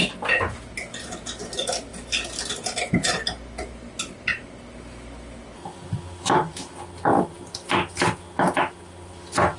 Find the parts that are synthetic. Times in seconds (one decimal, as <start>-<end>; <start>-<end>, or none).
none